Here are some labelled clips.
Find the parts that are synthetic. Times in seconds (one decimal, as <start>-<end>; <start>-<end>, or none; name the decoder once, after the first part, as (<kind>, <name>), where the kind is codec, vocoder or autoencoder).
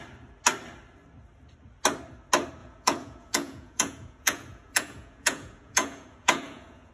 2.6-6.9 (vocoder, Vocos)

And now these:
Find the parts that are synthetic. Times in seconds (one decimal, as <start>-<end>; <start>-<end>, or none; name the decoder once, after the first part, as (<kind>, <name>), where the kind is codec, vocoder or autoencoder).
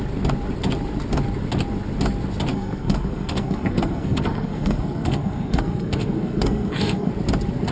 2.5-7.1 (codec, SNAC)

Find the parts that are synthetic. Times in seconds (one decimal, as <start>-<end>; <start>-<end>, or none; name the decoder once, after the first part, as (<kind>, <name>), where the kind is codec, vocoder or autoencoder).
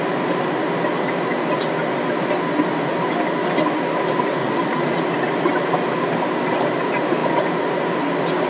4.4-5.0 (vocoder, Vocos)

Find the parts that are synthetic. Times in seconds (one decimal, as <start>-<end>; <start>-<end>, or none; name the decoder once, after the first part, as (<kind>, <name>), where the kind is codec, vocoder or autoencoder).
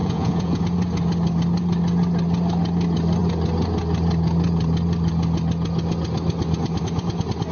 0.0-0.6 (vocoder, Vocos)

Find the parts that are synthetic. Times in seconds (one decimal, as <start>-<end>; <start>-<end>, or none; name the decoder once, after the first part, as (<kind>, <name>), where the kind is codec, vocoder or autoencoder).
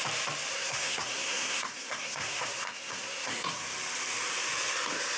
0.5-3.6 (codec, SNAC)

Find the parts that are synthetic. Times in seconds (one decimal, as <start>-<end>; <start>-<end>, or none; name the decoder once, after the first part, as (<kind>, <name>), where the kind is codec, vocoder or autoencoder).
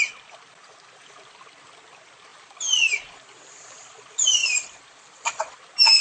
2.3-3.8 (vocoder, BigVGAN v2); 4.4-5.3